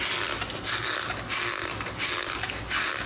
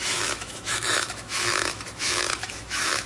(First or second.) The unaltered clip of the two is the first